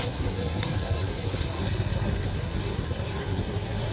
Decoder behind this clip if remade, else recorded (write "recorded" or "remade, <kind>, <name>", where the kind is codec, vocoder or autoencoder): remade, codec, SNAC